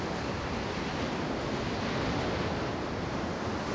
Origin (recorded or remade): recorded